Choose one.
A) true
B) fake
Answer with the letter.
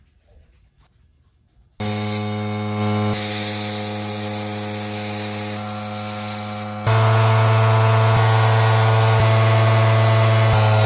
A